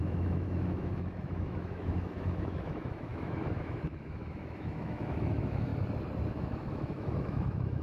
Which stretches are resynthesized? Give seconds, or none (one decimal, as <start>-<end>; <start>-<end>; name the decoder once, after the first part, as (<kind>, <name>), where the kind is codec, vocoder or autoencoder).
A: 0.0-5.7 (autoencoder, DAC-VAE); 6.3-7.8